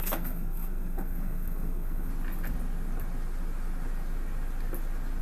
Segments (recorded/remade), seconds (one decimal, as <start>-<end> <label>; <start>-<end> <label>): 0.0-2.1 remade; 2.1-5.2 recorded